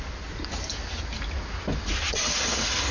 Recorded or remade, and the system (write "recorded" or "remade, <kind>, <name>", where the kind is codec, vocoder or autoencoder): recorded